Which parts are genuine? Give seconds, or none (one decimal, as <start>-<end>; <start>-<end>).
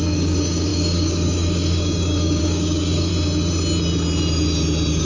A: 3.1-5.0